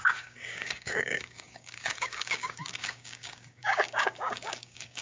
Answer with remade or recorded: remade